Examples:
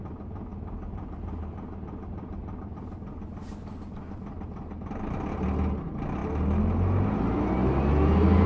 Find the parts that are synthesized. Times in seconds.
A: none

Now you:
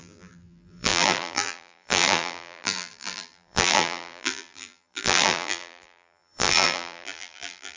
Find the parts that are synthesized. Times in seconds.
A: 0.0-7.8 (vocoder, BigVGAN v2)